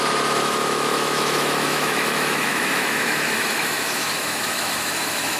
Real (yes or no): no